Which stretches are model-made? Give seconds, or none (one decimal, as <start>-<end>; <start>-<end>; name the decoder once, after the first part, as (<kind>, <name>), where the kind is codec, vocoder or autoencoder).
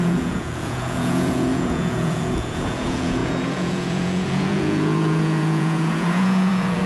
0.0-6.9 (vocoder, Vocos)